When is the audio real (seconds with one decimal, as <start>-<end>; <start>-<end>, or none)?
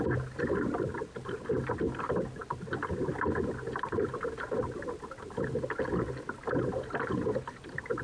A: 0.0-8.0